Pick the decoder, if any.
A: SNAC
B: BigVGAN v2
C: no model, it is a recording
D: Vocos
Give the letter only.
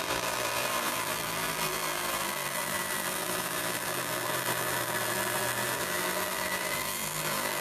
B